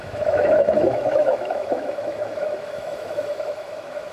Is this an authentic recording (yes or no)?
no